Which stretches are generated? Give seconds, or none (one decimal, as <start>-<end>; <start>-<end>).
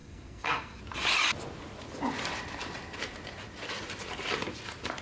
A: 0.0-0.8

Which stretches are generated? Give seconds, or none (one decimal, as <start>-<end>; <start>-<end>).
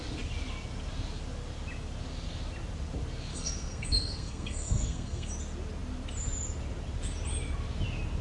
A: 3.3-5.3